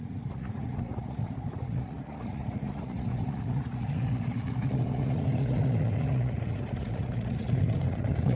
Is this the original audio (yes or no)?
no